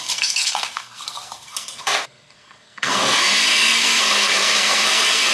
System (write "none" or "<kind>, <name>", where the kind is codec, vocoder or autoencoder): codec, SNAC